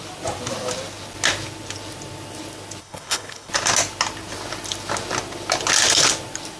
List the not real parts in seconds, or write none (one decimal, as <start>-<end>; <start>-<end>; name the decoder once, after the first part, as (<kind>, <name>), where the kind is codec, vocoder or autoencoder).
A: 2.8-3.5 (codec, HILCodec)